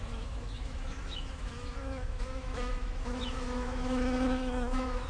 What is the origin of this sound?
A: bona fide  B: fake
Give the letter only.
B